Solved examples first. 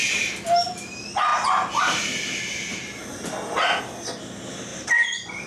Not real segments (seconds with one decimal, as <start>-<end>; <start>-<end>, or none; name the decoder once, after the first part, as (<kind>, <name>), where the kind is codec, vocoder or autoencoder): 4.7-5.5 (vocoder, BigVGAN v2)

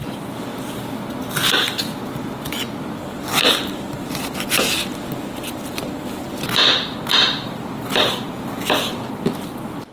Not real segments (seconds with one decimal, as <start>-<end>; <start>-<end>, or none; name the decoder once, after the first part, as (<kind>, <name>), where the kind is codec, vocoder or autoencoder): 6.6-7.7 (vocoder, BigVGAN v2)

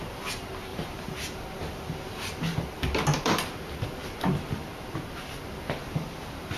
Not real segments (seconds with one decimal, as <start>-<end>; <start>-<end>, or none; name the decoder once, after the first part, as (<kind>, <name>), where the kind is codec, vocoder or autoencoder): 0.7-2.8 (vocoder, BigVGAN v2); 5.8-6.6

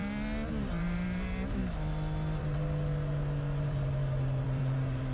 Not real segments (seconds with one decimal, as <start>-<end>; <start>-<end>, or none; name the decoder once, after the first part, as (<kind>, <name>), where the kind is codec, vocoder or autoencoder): 0.8-1.6 (vocoder, BigVGAN v2); 3.6-5.1

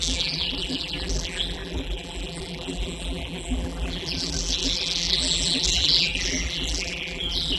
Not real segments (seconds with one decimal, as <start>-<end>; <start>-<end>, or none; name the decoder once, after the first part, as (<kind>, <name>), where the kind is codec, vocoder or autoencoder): 0.0-7.6 (vocoder, BigVGAN v2)

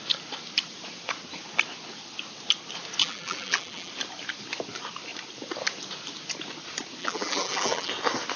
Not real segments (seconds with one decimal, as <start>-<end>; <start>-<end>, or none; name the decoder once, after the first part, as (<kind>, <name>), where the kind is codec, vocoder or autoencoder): 3.0-3.9 (vocoder, BigVGAN v2); 7.0-7.9

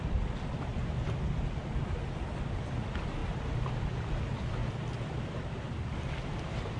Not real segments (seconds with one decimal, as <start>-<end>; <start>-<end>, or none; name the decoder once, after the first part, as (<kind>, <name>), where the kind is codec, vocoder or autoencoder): 0.0-0.7 (vocoder, BigVGAN v2); 2.8-6.8